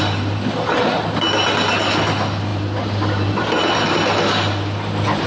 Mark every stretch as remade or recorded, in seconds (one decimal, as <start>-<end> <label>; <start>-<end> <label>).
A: 0.0-5.3 recorded